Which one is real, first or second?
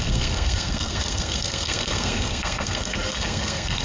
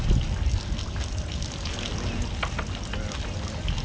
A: second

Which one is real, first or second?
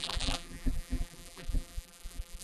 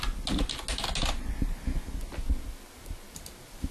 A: second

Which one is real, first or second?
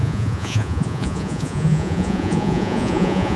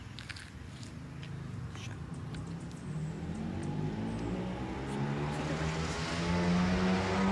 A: second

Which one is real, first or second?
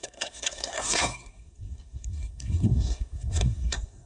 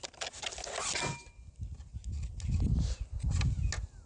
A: second